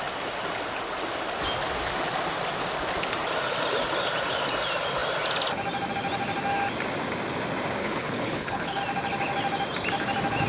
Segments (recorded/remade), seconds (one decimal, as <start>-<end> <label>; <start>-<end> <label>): 0.0-7.8 recorded; 7.8-8.8 remade; 8.8-10.5 recorded